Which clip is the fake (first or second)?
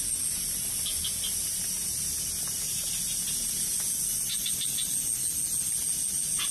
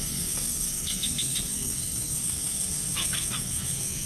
second